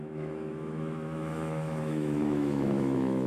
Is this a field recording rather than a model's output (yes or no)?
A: no